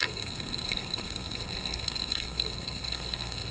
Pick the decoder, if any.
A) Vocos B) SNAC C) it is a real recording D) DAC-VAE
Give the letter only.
B